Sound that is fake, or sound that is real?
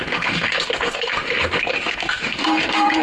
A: fake